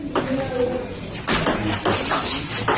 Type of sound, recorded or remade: recorded